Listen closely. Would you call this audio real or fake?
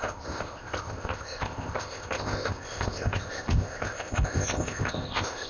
fake